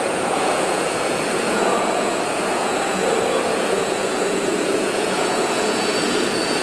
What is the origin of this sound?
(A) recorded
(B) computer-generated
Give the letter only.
B